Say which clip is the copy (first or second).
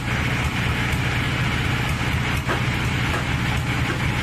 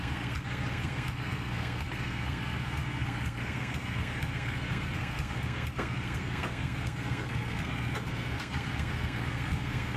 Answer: second